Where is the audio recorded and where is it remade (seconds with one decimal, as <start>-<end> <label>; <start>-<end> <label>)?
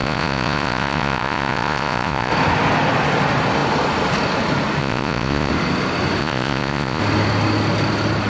0.0-2.3 remade; 2.3-4.8 recorded; 4.8-5.5 remade; 5.5-6.2 recorded; 6.2-7.0 remade; 7.0-8.3 recorded